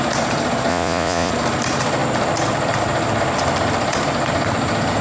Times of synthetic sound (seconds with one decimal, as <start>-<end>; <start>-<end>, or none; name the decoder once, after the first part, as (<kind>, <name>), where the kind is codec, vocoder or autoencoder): 0.7-1.3 (vocoder, Vocos)